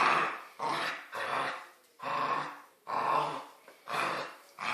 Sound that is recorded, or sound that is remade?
remade